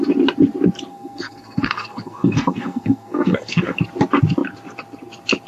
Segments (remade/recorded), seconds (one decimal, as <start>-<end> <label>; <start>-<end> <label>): 0.0-0.9 recorded; 0.9-3.8 remade; 3.8-5.5 recorded